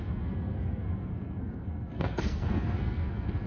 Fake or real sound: fake